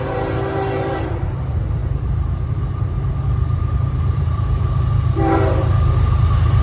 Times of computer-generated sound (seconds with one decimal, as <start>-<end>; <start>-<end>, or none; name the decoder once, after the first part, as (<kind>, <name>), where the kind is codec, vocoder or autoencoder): 0.0-6.6 (vocoder, BigVGAN v2)